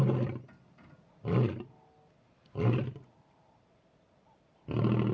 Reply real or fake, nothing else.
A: real